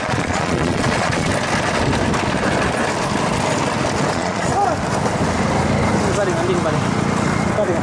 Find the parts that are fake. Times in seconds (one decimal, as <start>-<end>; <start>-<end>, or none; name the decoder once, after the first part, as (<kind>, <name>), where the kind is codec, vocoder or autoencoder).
0.0-1.3 (vocoder, Vocos); 4.1-4.5